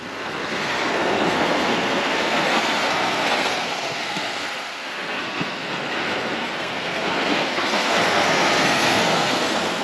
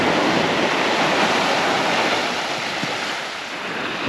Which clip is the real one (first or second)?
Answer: second